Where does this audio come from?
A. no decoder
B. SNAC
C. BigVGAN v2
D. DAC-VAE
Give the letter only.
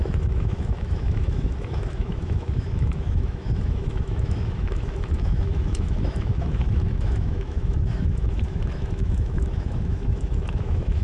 D